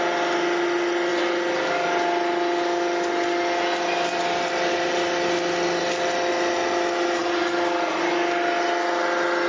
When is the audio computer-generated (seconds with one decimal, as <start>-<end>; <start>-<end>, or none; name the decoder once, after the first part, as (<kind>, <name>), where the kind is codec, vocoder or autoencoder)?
none